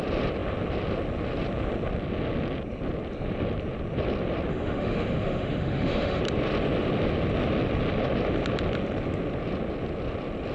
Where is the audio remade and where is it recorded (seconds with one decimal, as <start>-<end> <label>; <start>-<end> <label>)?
0.0-4.5 recorded; 4.5-6.2 remade; 6.2-10.5 recorded